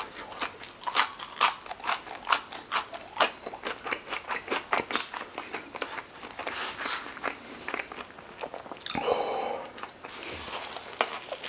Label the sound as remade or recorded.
recorded